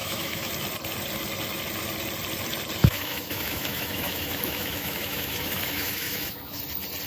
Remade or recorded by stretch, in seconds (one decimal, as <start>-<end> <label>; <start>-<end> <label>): 0.0-0.5 remade; 0.5-2.8 recorded; 2.8-6.6 remade; 6.6-7.1 recorded